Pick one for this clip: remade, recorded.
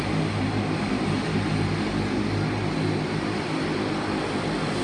recorded